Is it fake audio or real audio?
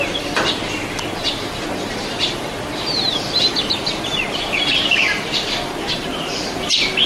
real